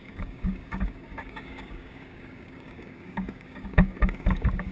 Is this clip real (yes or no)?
no